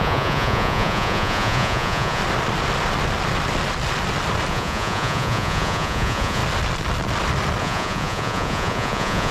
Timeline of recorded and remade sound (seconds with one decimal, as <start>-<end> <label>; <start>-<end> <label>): 0.0-2.2 remade; 2.2-4.5 recorded; 4.5-6.4 remade; 6.4-7.6 recorded; 7.6-9.3 remade